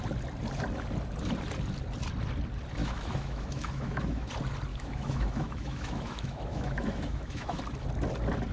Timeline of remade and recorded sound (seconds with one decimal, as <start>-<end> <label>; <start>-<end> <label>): 0.0-2.8 recorded; 2.8-4.3 remade; 4.3-4.7 recorded; 4.7-7.6 remade; 7.6-8.5 recorded